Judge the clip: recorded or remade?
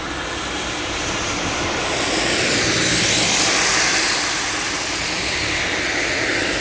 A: remade